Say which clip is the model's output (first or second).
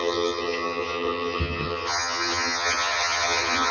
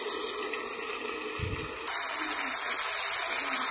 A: first